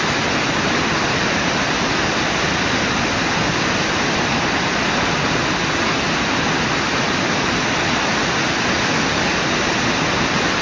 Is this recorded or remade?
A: recorded